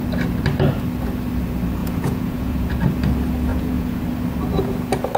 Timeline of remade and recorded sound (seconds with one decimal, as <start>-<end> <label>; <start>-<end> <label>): 0.0-1.8 recorded; 1.8-2.7 remade; 2.7-3.5 recorded; 3.5-4.0 remade; 4.0-5.2 recorded